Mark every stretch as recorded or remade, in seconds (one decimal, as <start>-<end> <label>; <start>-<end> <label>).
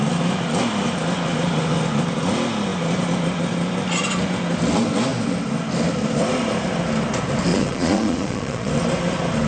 0.0-7.5 recorded; 7.5-8.7 remade; 8.7-9.5 recorded